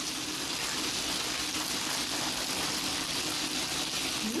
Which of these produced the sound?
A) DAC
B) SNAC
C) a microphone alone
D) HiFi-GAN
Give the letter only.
C